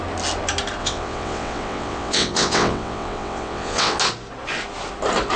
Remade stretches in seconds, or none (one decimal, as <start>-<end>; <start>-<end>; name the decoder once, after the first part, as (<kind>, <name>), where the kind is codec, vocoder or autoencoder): 0.8-4.0 (vocoder, WaveNeXt)